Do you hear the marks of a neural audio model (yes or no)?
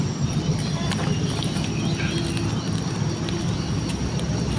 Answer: no